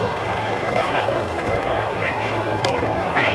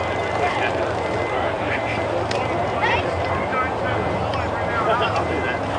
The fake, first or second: first